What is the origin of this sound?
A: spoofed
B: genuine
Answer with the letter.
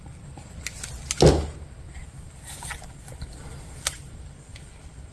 B